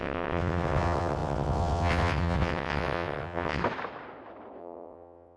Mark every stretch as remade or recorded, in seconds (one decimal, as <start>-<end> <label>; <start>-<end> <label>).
0.0-3.6 remade; 3.6-4.6 recorded; 4.6-5.4 remade